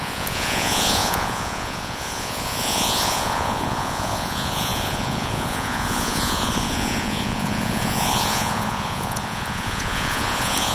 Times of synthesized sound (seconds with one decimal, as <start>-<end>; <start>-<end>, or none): 0.0-10.7